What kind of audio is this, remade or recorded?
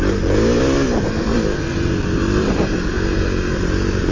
remade